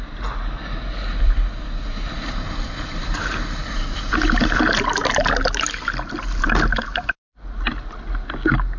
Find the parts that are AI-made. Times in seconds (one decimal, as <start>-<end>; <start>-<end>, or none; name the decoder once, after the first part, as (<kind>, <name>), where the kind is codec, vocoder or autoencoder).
none